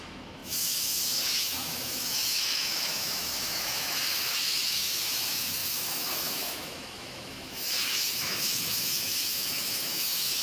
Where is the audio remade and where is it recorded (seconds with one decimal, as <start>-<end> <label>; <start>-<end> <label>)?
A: 0.0-10.4 remade